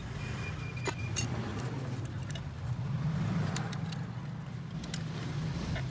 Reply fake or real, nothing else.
real